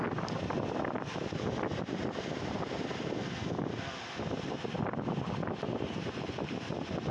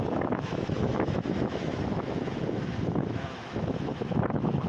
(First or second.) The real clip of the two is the first